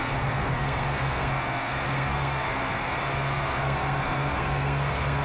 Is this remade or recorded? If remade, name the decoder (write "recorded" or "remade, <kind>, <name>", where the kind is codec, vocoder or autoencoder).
remade, codec, SNAC